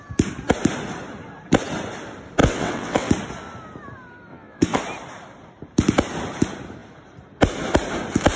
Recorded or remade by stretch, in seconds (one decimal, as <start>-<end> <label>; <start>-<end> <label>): 0.0-2.4 recorded; 2.4-3.1 remade; 3.1-4.3 recorded; 4.3-4.8 remade; 4.8-8.4 recorded